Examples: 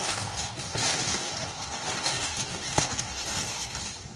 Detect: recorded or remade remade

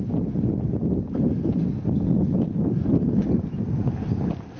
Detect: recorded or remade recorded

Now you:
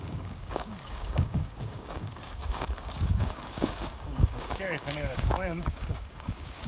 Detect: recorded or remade remade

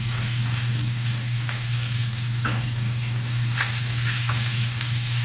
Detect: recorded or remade remade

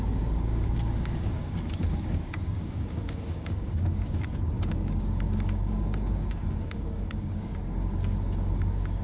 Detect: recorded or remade remade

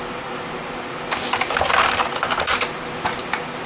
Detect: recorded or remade recorded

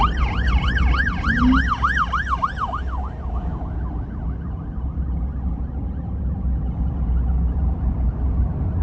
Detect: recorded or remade recorded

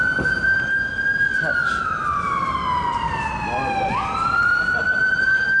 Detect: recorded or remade recorded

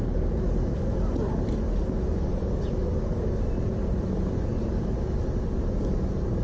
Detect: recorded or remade recorded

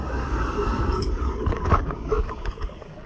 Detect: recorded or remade remade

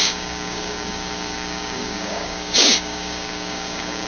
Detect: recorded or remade remade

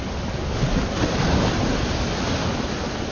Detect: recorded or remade recorded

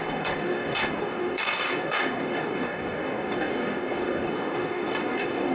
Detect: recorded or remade remade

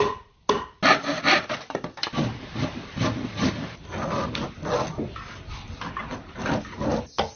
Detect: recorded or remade recorded